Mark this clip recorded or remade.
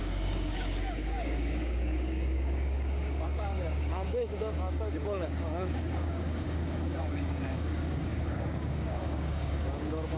remade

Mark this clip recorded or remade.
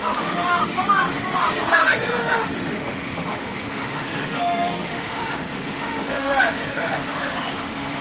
remade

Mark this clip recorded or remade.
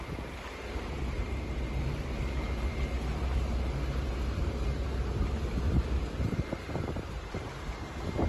remade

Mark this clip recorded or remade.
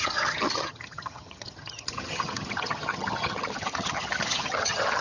remade